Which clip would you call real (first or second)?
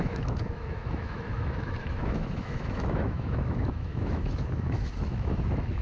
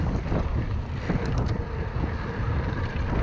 second